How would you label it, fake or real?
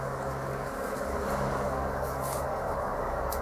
fake